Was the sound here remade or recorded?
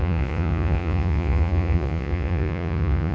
remade